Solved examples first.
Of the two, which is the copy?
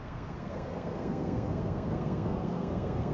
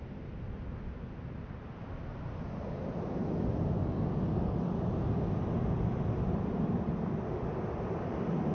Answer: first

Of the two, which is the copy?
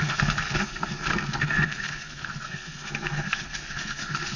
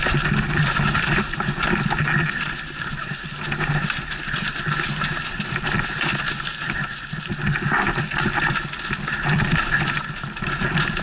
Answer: first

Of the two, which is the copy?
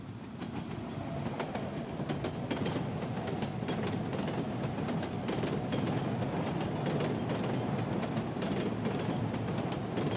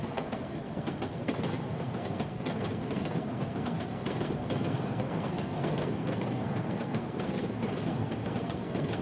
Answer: second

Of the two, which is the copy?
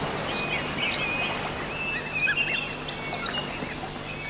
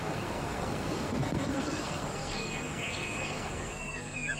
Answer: second